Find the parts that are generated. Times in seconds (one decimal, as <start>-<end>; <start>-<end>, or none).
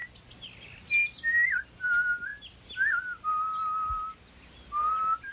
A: none